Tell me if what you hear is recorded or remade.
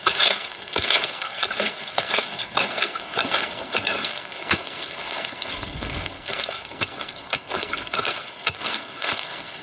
remade